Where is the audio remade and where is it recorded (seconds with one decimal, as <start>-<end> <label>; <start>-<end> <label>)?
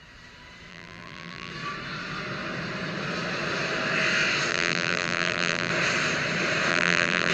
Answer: 0.0-0.7 recorded; 0.7-1.5 remade; 1.5-4.5 recorded; 4.5-5.7 remade; 5.7-6.7 recorded; 6.7-7.3 remade